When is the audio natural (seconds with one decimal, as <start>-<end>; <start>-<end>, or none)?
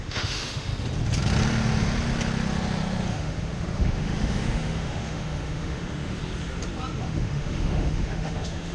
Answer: 0.7-3.1; 6.2-7.0